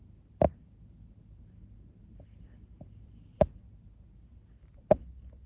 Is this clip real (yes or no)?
yes